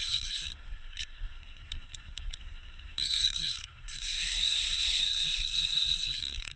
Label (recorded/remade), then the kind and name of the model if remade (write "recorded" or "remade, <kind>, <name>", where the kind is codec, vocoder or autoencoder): remade, codec, SNAC